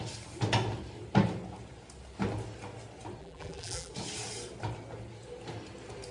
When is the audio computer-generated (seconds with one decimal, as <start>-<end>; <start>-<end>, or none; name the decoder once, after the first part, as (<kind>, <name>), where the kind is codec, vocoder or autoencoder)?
3.2-3.9 (vocoder, BigVGAN v2)